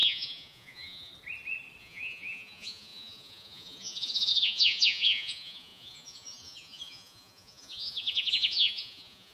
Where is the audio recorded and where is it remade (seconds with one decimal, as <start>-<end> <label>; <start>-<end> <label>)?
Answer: 0.0-1.1 remade; 1.1-1.8 recorded; 1.8-9.3 remade

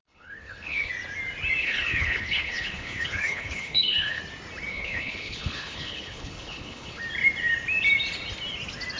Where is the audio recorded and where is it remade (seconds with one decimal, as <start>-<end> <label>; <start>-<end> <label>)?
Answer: 0.0-0.9 remade; 0.9-1.6 recorded; 1.6-4.2 remade; 4.2-4.7 recorded; 4.7-7.0 remade; 7.0-9.0 recorded

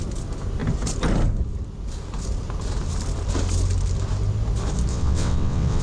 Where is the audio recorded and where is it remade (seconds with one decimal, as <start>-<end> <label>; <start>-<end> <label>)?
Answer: 0.0-4.9 recorded; 4.9-5.8 remade

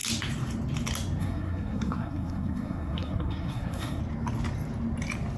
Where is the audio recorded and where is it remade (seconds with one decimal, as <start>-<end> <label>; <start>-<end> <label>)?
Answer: 0.0-1.2 recorded; 1.2-4.0 remade; 4.0-5.4 recorded

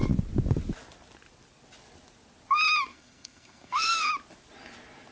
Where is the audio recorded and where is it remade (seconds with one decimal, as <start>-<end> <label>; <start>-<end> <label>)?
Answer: 0.0-2.9 recorded; 2.9-4.1 remade; 4.1-5.1 recorded

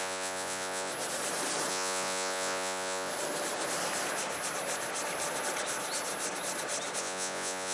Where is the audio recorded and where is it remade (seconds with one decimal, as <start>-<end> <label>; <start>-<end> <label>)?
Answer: 0.0-0.9 remade; 0.9-1.7 recorded; 1.7-3.1 remade; 3.1-7.0 recorded; 7.0-7.7 remade

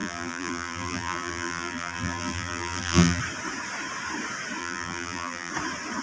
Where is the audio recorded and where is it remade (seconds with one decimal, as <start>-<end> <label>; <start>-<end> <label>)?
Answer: 0.0-3.2 remade; 3.2-4.6 recorded; 4.6-5.5 remade; 5.5-6.0 recorded

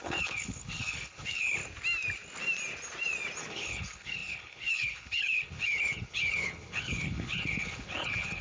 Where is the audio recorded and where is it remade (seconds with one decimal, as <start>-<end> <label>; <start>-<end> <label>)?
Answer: 0.0-1.6 remade; 1.6-3.4 recorded; 3.4-8.4 remade